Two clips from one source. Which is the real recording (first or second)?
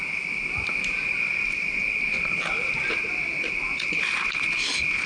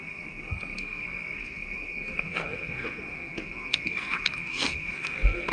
first